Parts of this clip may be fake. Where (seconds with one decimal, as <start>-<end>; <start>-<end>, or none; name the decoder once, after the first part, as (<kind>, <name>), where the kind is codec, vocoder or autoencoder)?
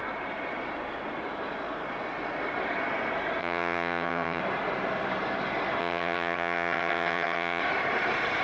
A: 3.4-4.4 (vocoder, HiFi-GAN); 5.8-7.6